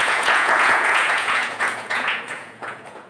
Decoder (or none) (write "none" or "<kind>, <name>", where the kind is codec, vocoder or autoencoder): vocoder, Vocos